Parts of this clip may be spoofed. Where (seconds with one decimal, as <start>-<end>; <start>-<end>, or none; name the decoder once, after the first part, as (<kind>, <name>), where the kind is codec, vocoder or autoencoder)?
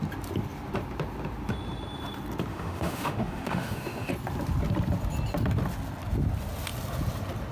2.5-4.1 (autoencoder, DAC-VAE)